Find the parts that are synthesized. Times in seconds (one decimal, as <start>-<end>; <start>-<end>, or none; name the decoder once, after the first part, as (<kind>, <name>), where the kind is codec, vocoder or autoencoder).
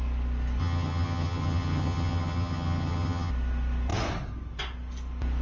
0.6-3.3 (vocoder, HiFi-GAN)